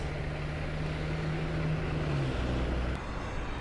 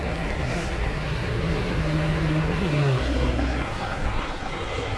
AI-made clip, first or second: second